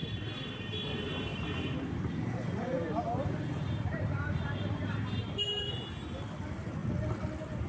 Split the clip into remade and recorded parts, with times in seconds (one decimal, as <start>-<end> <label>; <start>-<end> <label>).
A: 0.0-1.3 recorded; 1.3-5.6 remade; 5.6-7.7 recorded